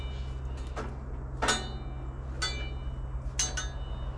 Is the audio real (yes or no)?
yes